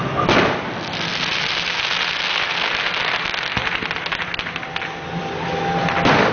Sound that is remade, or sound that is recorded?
recorded